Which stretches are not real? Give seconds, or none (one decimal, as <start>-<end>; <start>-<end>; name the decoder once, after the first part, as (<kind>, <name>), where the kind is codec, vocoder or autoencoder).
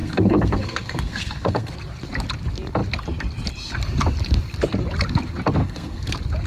0.0-1.7 (codec, SNAC); 5.6-6.1